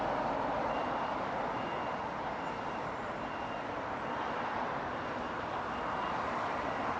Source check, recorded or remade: remade